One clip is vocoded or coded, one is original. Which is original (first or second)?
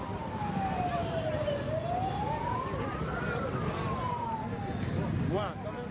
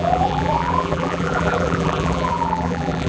first